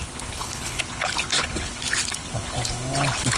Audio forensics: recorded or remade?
remade